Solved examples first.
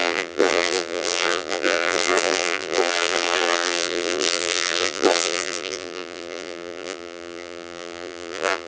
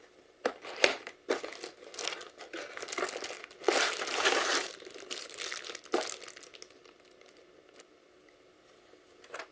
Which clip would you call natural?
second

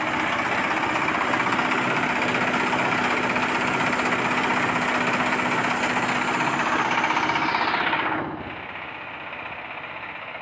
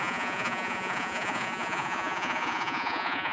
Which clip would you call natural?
first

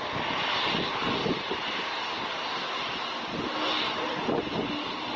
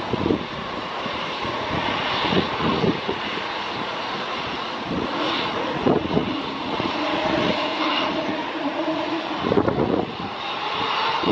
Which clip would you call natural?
first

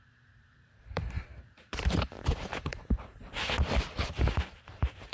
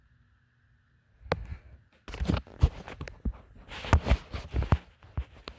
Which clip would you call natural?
second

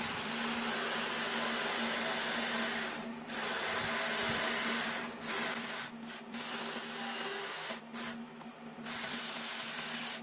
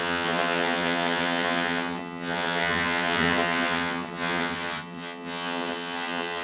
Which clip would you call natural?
first